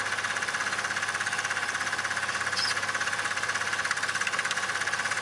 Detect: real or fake real